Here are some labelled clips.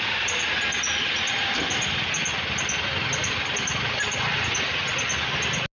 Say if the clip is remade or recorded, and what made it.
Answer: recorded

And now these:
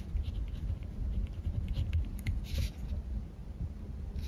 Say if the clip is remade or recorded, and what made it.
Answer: recorded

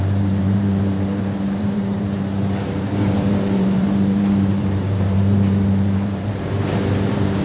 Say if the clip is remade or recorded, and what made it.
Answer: remade, vocoder, BigVGAN v2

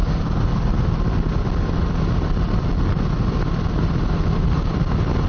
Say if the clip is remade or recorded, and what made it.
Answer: recorded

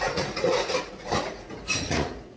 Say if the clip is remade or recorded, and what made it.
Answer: remade, vocoder, Vocos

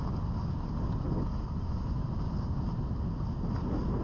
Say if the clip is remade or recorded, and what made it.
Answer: recorded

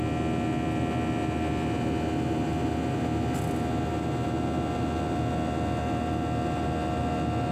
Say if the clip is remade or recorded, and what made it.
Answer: recorded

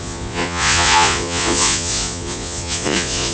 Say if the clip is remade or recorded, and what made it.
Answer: remade, vocoder, Vocos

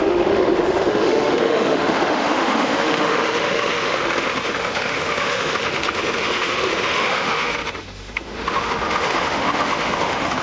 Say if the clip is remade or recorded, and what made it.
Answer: remade, autoencoder, DAC-VAE